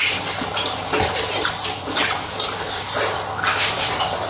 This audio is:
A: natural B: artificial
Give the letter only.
A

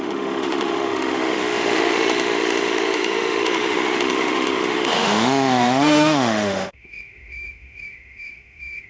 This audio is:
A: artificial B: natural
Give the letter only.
A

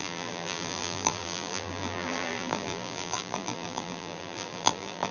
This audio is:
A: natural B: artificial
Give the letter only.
B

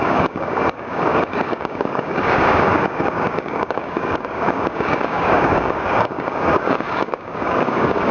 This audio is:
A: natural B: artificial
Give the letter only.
B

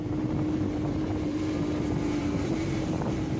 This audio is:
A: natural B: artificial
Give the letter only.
B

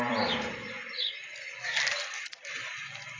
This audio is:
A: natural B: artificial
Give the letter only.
B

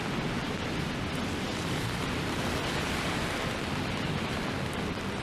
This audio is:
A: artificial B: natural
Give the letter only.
B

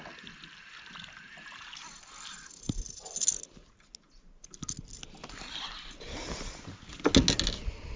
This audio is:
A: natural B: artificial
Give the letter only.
A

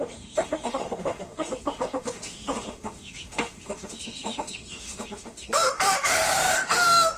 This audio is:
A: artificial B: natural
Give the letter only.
A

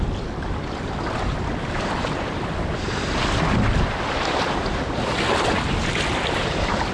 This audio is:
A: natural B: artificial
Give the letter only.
A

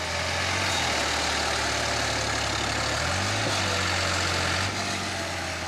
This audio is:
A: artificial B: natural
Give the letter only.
B